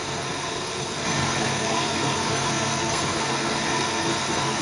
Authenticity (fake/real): fake